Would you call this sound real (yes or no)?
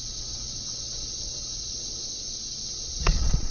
no